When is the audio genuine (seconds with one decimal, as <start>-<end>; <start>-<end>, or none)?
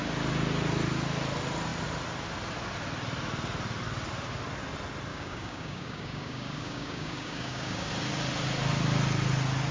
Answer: 0.0-5.1; 7.9-9.7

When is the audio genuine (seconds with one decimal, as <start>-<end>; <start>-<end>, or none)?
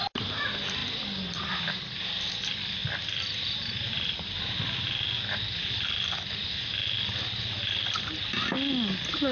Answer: 0.0-9.3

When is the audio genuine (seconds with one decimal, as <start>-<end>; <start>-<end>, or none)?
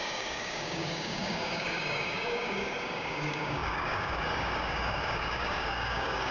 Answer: none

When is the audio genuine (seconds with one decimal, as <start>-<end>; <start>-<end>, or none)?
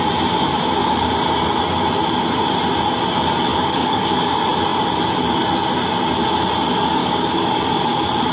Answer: 0.0-3.5; 4.1-7.0; 7.8-8.3